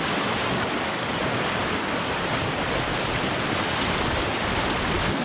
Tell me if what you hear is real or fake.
fake